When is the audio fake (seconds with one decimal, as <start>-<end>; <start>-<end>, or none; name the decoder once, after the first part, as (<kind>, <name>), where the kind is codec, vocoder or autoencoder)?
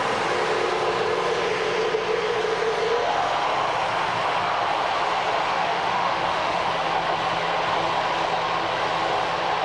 5.5-6.7 (autoencoder, DAC-VAE)